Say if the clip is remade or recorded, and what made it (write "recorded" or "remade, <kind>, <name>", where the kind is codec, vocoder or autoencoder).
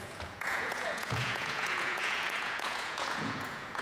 remade, vocoder, Vocos